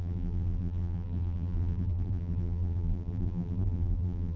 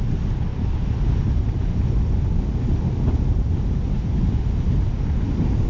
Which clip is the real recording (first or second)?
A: second